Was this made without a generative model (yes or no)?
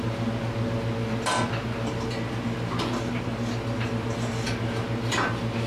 yes